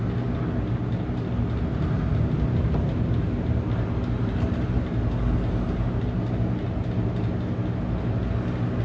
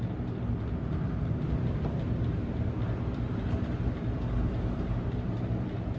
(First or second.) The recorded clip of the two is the first